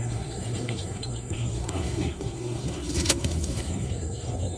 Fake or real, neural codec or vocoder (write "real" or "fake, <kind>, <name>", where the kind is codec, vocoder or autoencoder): fake, codec, SNAC